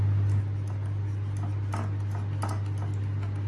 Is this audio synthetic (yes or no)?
no